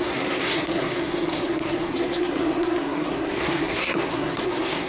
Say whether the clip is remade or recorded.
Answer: remade